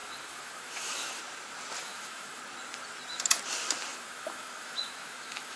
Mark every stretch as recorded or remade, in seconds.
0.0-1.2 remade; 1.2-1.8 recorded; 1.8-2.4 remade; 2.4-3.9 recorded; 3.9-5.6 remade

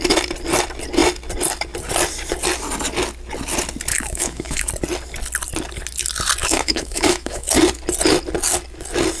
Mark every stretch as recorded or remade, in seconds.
0.0-3.9 recorded; 3.9-4.7 remade; 4.7-6.4 recorded; 6.4-7.5 remade; 7.5-9.2 recorded